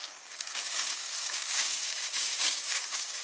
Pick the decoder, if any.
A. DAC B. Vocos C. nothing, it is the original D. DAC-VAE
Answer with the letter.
A